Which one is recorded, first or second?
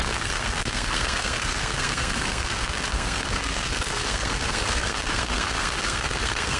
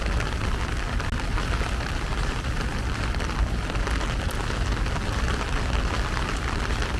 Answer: second